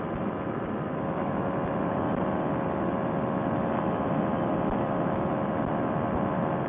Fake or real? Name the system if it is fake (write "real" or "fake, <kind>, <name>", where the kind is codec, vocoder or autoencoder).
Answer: real